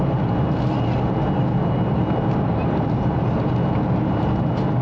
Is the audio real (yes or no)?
yes